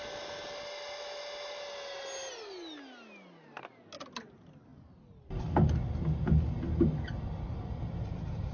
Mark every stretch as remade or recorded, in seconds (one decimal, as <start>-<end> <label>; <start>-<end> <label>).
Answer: 0.0-8.5 recorded